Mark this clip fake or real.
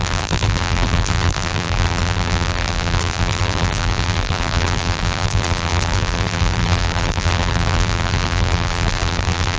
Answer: fake